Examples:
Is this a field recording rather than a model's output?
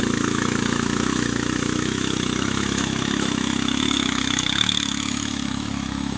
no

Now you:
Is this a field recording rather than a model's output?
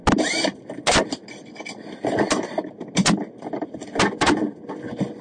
yes